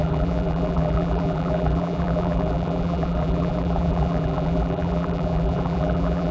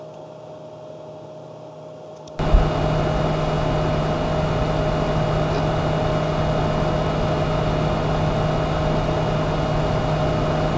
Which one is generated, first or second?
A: first